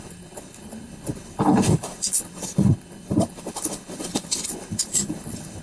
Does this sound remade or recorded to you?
remade